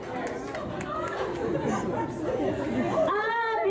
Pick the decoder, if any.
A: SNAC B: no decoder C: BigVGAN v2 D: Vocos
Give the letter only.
B